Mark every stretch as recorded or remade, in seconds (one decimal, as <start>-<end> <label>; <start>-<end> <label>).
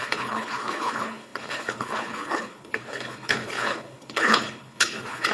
0.0-5.3 remade